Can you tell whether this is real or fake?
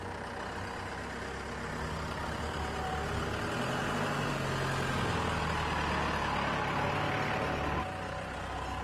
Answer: real